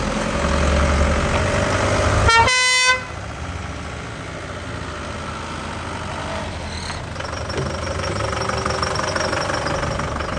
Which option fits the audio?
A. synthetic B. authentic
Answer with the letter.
B